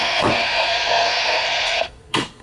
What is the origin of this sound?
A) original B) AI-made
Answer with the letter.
B